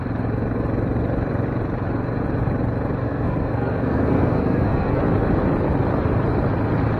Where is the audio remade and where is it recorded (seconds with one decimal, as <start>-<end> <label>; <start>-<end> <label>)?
0.0-3.0 recorded; 3.0-5.0 remade; 5.0-7.0 recorded